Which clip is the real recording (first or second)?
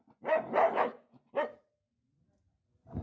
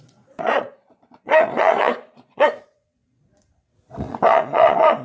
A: first